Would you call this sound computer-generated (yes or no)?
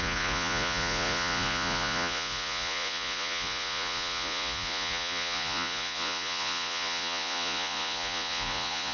yes